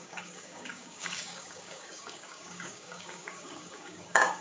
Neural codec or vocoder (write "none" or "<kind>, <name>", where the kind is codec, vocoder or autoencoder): codec, DAC